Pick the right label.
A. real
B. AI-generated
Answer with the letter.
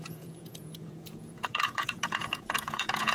B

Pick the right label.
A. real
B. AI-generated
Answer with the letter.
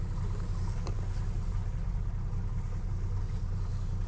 A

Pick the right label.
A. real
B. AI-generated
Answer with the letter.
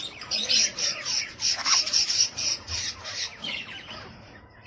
B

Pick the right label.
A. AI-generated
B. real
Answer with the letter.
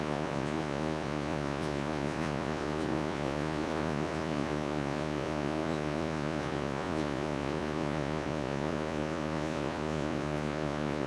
A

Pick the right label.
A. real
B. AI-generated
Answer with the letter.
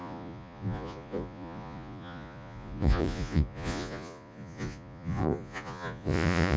B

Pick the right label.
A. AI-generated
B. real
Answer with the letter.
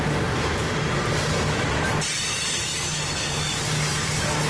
B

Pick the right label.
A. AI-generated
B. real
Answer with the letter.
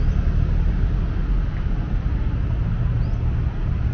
B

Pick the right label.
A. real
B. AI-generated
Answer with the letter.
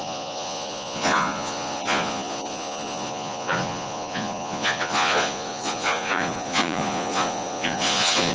B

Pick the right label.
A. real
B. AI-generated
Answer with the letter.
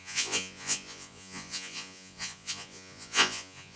B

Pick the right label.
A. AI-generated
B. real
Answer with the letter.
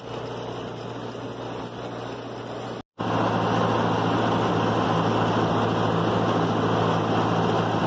B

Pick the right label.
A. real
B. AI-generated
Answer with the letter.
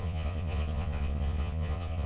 B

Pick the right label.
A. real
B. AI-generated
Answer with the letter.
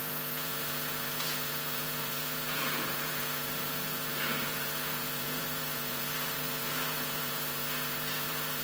B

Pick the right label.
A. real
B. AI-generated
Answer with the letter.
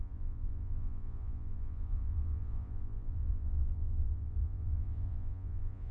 B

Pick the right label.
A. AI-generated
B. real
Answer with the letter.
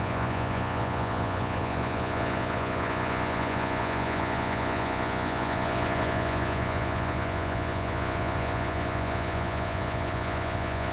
A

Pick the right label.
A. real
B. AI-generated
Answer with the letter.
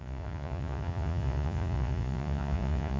B